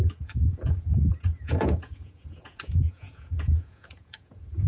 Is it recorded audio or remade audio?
remade